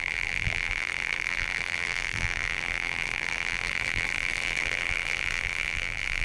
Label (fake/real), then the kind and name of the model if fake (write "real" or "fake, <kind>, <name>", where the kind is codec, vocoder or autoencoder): fake, vocoder, BigVGAN v2